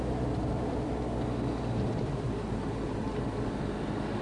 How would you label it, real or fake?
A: real